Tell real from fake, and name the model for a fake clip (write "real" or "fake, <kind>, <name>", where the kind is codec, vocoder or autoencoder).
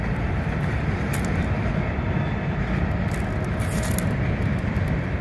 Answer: real